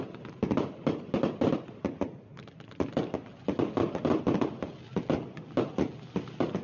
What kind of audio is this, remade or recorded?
recorded